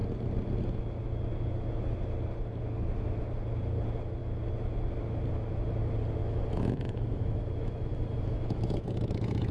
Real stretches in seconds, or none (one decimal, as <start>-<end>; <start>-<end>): 0.0-6.2

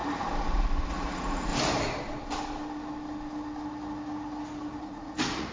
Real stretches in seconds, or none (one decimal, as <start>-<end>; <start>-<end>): 0.0-0.9; 1.5-4.8

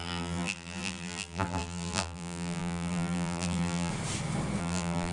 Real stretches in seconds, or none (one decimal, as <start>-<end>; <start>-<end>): 3.9-4.6